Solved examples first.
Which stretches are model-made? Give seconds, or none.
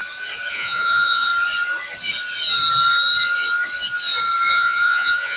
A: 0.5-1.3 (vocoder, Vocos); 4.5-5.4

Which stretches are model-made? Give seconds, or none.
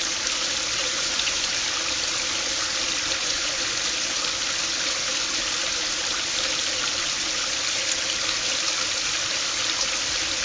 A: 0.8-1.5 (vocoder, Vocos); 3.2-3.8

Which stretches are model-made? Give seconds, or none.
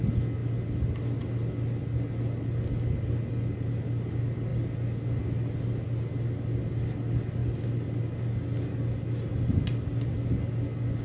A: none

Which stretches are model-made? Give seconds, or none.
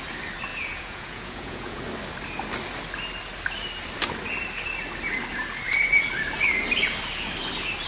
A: 0.5-1.8 (vocoder, Vocos)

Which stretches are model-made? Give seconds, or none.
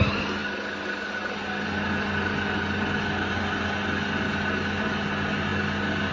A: none